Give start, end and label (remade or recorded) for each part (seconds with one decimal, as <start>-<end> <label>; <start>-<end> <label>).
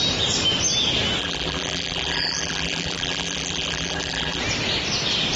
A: 0.0-1.2 recorded; 1.2-4.4 remade; 4.4-5.4 recorded